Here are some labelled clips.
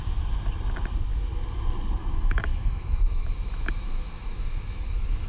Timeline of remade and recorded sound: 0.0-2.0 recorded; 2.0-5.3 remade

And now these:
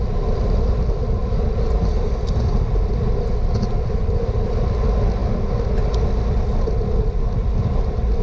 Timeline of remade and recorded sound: 0.0-8.2 recorded

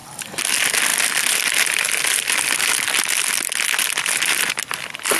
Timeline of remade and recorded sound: 0.0-5.2 recorded